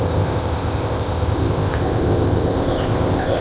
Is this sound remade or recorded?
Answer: remade